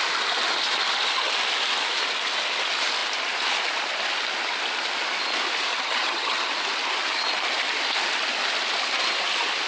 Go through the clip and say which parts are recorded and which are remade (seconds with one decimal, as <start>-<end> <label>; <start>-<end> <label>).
0.0-5.7 recorded; 5.7-6.5 remade; 6.5-9.7 recorded